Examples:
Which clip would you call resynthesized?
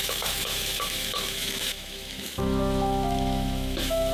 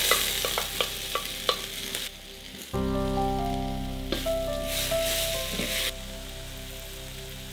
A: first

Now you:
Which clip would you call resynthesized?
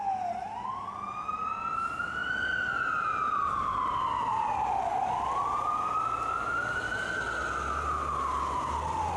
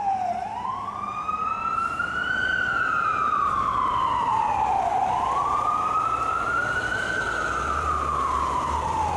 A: second